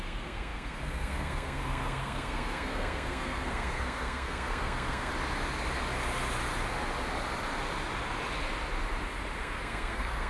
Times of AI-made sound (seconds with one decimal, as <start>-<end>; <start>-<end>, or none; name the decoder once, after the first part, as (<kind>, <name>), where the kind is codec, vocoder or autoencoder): 0.0-5.1 (codec, SNAC); 9.4-10.3